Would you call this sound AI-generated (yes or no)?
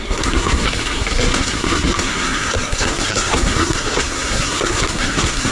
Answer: yes